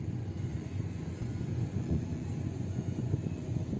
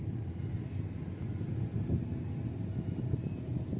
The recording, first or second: second